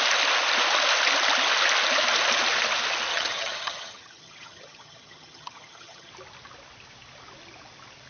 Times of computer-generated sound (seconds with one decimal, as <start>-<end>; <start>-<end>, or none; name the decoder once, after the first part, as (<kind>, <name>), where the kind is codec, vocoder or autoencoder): 3.1-6.1 (vocoder, HiFi-GAN)